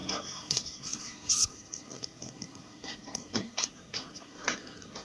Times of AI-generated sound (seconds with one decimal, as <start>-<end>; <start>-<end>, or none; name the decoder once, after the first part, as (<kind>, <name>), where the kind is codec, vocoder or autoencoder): 0.0-5.0 (codec, SNAC)